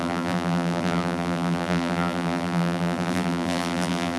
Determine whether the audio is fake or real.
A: fake